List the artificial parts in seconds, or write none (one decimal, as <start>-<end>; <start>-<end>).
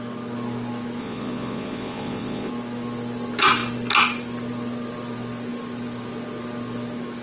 1.0-2.5